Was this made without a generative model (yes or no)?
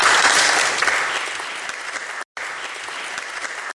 yes